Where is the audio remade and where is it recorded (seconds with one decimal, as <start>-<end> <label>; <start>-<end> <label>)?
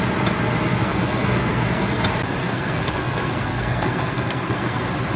0.0-0.7 recorded; 0.7-2.0 remade; 2.0-2.4 recorded; 2.4-4.8 remade; 4.8-5.2 recorded